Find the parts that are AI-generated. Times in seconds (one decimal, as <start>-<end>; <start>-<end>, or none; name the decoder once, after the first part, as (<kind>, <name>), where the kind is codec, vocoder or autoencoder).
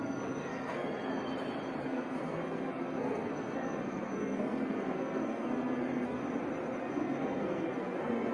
0.0-1.1 (codec, SNAC); 1.8-6.2; 6.8-8.3